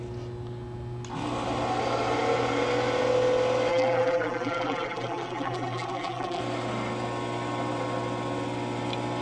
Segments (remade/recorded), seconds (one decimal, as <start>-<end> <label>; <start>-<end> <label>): 0.0-3.7 recorded; 3.7-6.4 remade; 6.4-9.2 recorded